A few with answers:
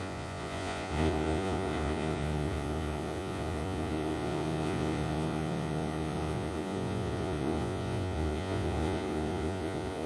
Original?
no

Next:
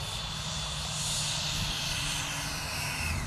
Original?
no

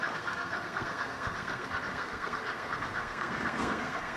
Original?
no